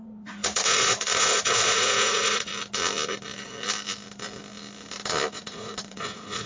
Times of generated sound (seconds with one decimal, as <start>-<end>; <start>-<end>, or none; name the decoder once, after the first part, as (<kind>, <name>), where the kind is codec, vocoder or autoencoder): 0.0-2.5 (vocoder, Vocos); 5.3-6.5